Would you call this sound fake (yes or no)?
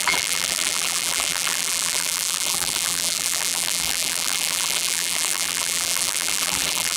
yes